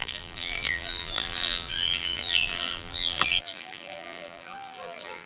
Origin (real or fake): fake